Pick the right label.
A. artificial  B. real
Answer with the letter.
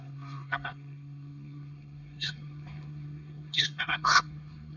A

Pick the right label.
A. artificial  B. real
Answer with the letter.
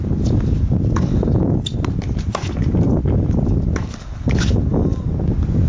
B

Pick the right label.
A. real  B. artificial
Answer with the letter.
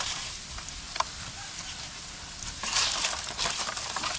A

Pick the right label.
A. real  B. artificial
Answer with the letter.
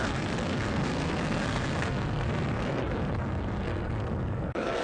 B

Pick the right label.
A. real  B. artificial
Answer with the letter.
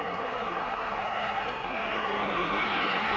B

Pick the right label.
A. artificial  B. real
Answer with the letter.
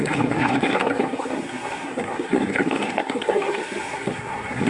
A